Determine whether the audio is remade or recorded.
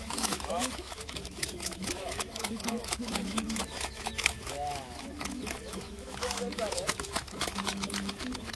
remade